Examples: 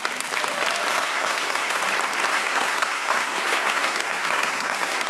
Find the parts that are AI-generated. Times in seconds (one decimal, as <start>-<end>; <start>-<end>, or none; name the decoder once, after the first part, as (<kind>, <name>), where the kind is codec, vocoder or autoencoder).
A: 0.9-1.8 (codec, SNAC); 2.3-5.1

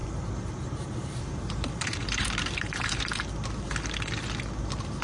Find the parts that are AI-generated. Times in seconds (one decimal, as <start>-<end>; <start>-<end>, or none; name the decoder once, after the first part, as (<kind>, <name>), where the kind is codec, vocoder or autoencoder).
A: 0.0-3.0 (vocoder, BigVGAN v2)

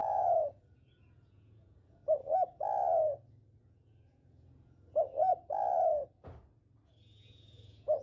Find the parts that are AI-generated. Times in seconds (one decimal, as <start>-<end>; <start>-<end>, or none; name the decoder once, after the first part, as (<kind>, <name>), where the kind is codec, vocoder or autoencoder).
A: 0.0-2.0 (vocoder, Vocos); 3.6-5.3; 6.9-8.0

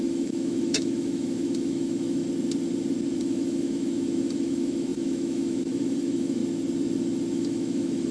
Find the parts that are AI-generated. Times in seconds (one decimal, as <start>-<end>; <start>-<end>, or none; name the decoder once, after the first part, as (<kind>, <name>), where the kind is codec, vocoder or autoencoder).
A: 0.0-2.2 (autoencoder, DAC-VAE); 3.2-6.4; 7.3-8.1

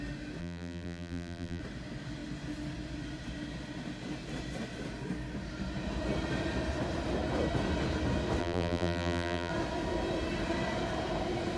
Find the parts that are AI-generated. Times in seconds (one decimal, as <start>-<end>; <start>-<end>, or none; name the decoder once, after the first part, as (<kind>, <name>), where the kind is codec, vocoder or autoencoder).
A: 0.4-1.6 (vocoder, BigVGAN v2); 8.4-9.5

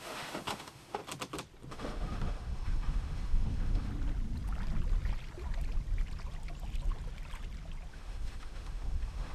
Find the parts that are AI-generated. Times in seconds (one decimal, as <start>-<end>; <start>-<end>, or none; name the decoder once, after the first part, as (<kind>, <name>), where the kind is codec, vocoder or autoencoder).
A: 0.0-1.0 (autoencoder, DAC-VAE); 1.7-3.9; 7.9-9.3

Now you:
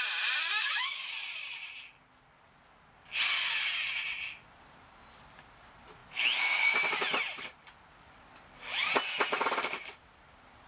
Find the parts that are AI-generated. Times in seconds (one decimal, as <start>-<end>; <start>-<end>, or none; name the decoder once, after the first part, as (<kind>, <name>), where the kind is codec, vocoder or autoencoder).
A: 0.6-1.1 (autoencoder, DAC-VAE); 6.0-6.7

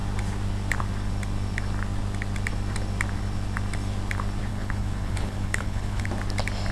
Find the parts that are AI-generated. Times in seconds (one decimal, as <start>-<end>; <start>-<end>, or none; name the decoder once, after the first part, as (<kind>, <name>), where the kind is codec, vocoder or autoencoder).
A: 4.5-6.1 (codec, HILCodec)